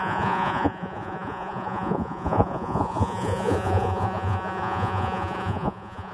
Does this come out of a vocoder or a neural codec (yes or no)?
yes